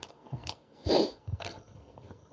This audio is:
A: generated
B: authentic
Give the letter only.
A